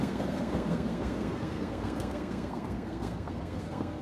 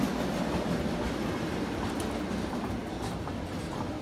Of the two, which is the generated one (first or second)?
first